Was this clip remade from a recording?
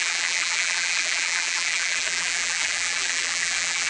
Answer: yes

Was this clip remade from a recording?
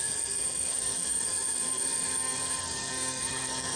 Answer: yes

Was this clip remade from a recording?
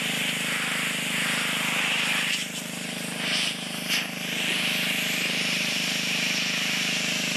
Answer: yes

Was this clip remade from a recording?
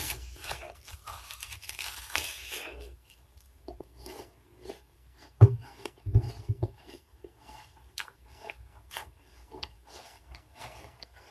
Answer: yes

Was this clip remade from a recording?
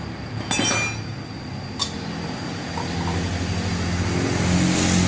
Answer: no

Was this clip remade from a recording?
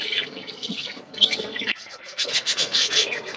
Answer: yes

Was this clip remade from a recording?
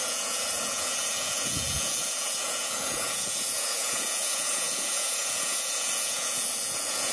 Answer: yes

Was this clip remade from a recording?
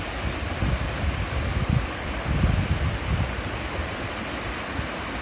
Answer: no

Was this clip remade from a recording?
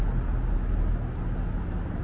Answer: no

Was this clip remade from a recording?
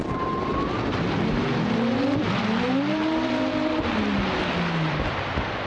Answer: yes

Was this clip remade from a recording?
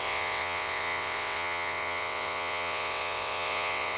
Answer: yes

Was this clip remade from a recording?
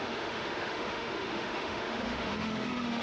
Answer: yes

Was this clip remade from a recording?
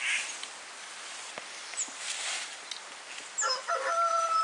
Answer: no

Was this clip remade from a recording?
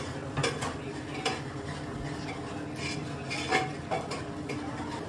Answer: no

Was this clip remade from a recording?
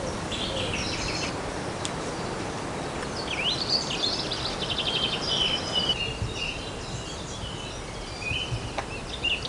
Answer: no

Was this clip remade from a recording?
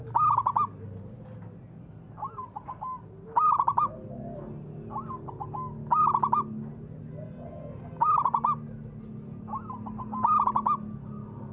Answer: no